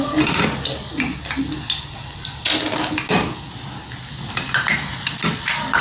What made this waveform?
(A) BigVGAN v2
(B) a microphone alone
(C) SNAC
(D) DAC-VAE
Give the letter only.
B